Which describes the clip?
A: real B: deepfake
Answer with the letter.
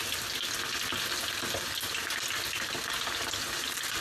A